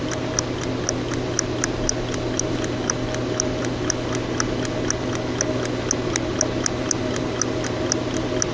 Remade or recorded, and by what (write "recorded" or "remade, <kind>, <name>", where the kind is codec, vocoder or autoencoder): recorded